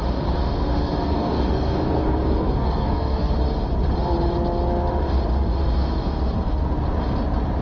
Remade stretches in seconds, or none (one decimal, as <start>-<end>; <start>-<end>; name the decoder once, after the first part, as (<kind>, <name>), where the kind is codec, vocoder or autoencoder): 0.8-3.3 (codec, SNAC)